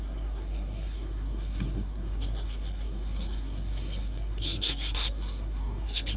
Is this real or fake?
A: fake